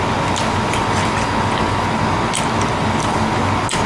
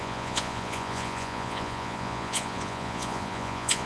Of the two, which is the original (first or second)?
first